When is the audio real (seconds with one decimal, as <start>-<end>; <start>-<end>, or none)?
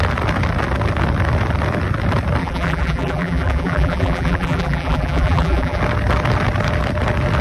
0.0-2.4; 5.8-7.4